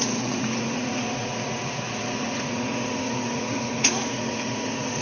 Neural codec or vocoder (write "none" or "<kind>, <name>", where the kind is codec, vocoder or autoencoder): vocoder, Vocos